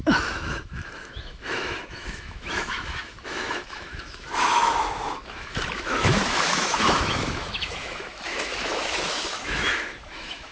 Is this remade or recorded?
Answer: remade